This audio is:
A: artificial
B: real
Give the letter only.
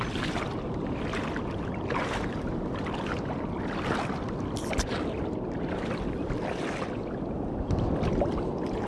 B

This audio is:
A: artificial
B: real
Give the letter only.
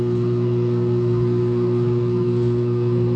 A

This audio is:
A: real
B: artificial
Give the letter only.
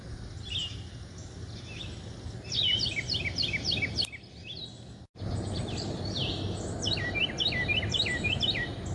A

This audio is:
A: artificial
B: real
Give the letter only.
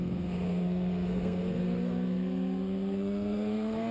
A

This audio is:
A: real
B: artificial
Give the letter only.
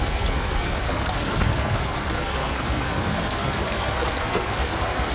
B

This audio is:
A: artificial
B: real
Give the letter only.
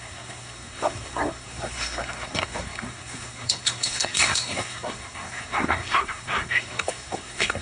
A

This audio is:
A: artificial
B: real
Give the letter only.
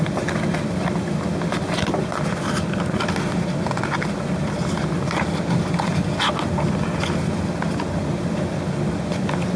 B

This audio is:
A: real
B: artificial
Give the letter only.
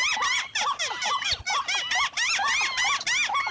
A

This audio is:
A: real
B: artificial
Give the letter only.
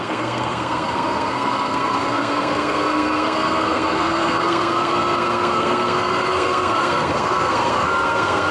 B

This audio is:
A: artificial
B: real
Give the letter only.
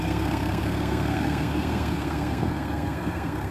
A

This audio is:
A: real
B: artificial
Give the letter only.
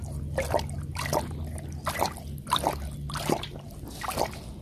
A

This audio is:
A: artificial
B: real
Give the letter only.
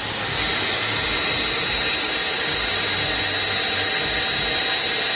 B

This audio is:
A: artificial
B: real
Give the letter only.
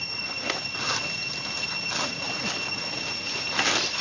B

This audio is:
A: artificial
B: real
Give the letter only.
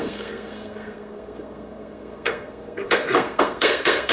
A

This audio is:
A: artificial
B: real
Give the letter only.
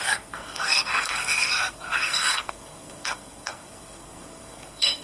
A